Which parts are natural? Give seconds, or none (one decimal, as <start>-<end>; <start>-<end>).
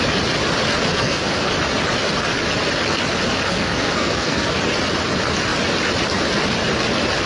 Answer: 0.0-0.9; 1.5-3.5; 4.6-7.3